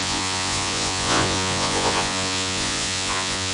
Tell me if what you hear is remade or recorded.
remade